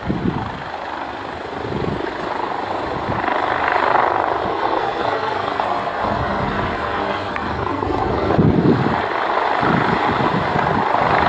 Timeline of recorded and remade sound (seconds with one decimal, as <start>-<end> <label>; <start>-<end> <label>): 0.0-4.5 recorded; 4.5-8.3 remade; 8.3-11.3 recorded